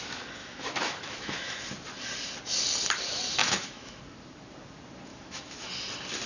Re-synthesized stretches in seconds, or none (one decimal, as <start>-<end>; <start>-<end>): 0.4-1.7; 3.4-4.0; 5.1-5.7